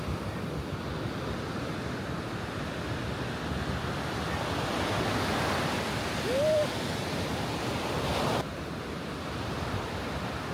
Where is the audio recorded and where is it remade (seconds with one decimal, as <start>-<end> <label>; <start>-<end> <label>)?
0.0-10.5 recorded